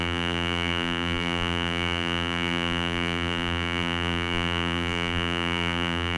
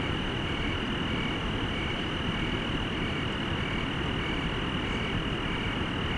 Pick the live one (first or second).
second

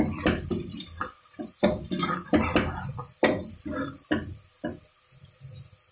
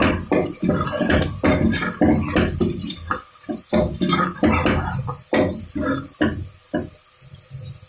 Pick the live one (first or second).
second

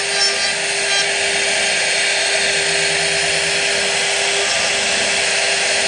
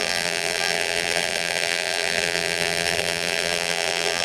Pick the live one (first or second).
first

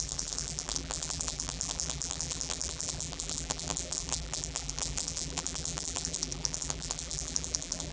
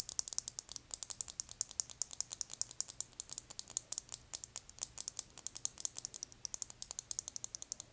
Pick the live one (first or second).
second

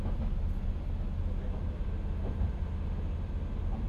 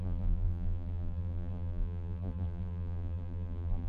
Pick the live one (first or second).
first